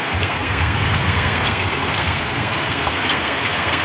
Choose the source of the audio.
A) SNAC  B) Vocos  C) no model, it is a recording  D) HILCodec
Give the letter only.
A